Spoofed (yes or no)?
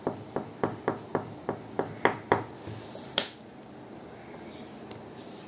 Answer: no